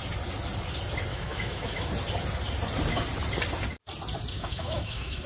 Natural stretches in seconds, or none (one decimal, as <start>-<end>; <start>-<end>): 0.0-1.1; 1.9-4.3